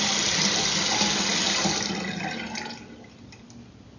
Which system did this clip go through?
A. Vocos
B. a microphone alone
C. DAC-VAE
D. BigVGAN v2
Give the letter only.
B